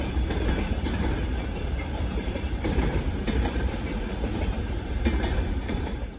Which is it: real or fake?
fake